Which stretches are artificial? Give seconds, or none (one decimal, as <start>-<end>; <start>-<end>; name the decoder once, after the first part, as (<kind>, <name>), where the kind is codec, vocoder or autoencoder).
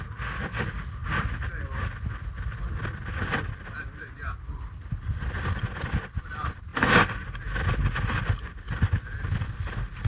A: none